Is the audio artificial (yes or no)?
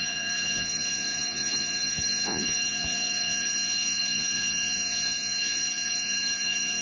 yes